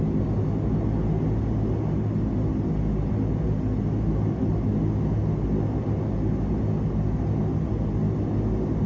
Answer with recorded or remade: recorded